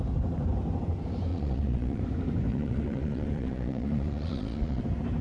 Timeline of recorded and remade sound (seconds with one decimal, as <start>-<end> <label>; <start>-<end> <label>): 0.0-1.3 recorded; 1.3-2.0 remade; 2.0-2.5 recorded; 2.5-4.8 remade; 4.8-5.2 recorded